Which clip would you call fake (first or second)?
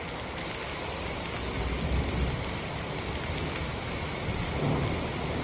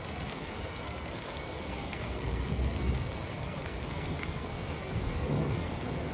second